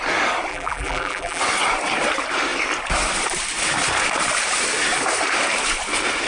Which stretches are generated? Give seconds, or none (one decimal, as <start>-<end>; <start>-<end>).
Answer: 0.5-1.4